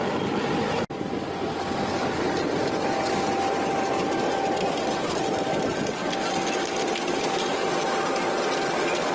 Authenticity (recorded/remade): recorded